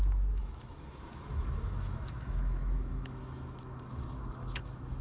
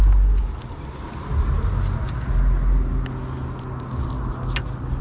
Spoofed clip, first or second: first